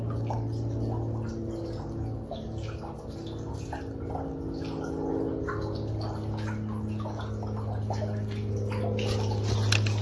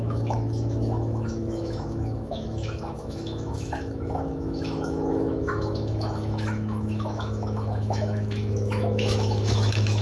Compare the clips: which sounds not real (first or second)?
second